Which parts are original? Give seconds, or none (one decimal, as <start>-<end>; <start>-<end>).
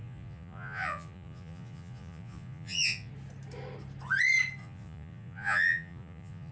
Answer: 3.1-4.6